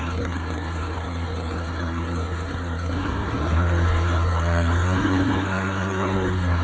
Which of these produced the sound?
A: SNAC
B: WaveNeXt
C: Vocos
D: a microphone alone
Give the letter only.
A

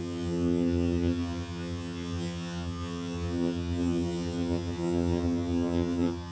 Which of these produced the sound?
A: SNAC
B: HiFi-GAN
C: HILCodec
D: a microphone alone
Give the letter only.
B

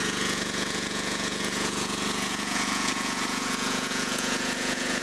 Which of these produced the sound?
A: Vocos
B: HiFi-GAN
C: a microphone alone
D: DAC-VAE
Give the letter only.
A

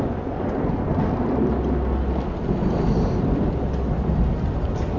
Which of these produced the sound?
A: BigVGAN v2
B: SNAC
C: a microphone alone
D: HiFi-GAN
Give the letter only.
C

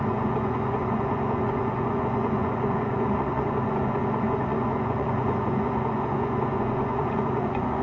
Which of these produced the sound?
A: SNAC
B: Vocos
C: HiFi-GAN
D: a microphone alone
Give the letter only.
B